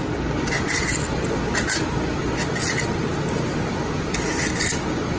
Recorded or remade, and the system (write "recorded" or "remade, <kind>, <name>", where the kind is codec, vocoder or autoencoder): recorded